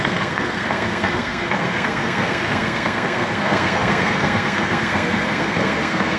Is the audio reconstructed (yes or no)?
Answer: yes